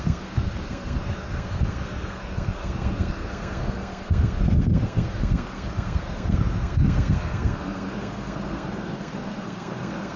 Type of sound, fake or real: fake